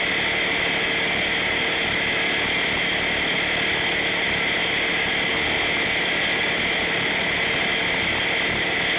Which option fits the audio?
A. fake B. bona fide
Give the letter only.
B